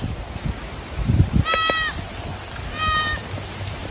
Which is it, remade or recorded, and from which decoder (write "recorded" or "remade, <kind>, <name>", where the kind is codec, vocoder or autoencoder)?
recorded